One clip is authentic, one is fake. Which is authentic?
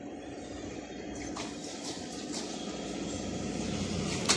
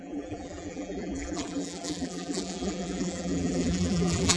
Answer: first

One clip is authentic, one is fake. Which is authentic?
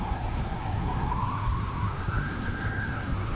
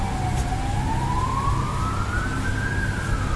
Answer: second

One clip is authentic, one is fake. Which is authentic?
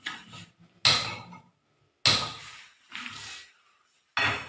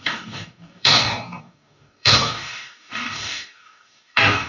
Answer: first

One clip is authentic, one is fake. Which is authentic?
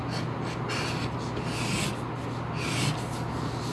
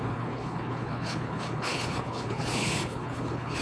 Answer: first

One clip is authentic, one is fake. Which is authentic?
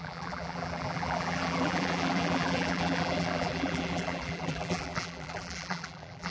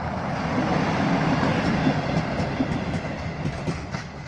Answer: second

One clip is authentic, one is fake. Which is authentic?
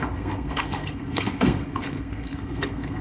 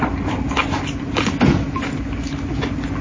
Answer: second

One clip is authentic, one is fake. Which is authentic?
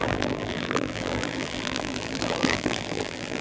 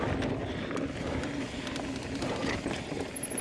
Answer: second